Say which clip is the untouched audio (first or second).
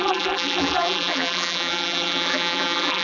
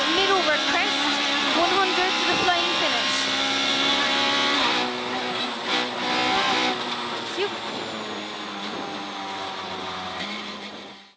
second